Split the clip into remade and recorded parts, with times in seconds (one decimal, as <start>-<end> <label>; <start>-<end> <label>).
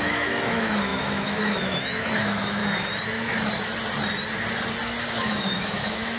0.0-2.6 remade; 2.6-5.1 recorded; 5.1-6.2 remade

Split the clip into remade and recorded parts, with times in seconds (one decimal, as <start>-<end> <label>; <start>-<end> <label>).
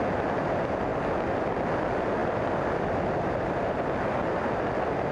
0.0-5.1 recorded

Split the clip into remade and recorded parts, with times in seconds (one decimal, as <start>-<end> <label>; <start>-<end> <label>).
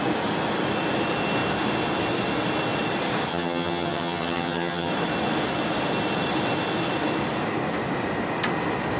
0.0-3.3 recorded; 3.3-4.9 remade; 4.9-9.0 recorded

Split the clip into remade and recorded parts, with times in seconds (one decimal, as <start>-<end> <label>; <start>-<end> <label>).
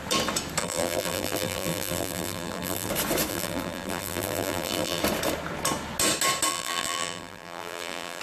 0.0-0.6 recorded; 0.6-2.9 remade; 2.9-3.3 recorded; 3.3-5.0 remade; 5.0-6.5 recorded; 6.5-8.2 remade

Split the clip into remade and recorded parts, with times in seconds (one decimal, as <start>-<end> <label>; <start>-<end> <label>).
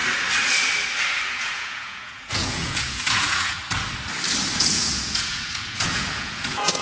0.0-1.3 recorded; 1.3-3.6 remade; 3.6-4.6 recorded; 4.6-6.8 remade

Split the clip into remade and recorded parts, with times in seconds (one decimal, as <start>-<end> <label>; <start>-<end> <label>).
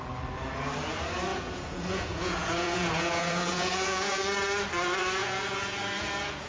0.0-1.3 recorded; 1.3-4.2 remade; 4.2-5.2 recorded; 5.2-6.5 remade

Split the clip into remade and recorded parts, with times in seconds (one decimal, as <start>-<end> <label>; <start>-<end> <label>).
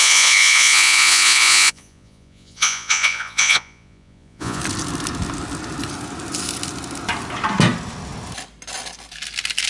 0.0-4.6 remade; 4.6-9.7 recorded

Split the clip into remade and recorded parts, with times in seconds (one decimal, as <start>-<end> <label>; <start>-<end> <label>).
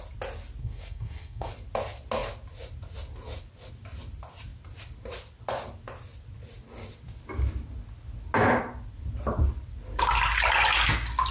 0.0-0.6 recorded; 0.6-1.5 remade; 1.5-11.3 recorded